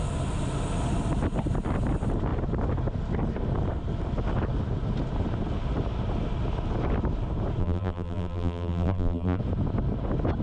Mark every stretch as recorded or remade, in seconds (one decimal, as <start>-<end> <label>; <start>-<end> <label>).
0.0-7.6 recorded; 7.6-9.4 remade; 9.4-10.4 recorded